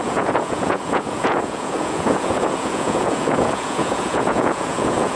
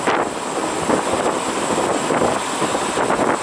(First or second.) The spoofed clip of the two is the first